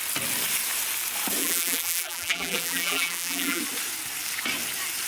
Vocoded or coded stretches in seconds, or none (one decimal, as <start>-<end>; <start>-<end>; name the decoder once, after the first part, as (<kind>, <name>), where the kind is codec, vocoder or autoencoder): 1.4-3.6 (vocoder, BigVGAN v2)